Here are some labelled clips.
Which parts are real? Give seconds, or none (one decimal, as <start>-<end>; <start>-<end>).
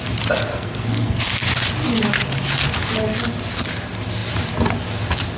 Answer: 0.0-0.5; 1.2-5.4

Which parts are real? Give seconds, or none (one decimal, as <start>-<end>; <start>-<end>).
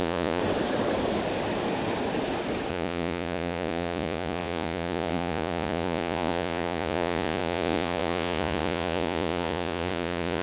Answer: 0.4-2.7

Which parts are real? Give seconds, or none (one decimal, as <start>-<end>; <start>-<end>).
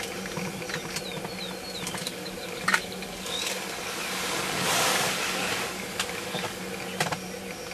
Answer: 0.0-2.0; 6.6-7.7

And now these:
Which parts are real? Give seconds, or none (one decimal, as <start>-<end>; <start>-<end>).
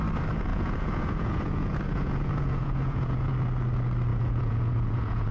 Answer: 0.0-0.5; 3.3-4.1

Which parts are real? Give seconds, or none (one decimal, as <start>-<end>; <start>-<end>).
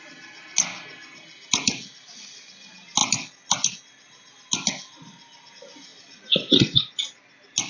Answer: 0.0-7.7